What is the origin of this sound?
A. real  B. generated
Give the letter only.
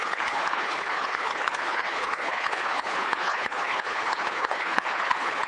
B